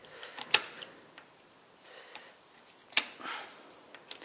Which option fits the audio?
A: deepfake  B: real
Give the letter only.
B